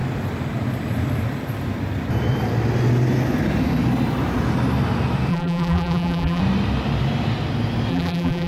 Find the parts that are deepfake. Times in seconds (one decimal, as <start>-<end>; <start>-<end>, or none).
5.3-6.4; 7.9-8.5